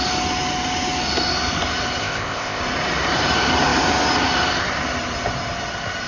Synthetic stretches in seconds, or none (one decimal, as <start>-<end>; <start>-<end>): 2.0-2.6